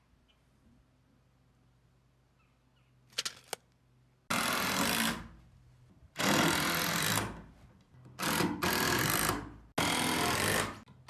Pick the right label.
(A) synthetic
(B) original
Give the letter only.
B